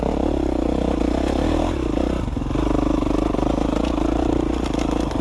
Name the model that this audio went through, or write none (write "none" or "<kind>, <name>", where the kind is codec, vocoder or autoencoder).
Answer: none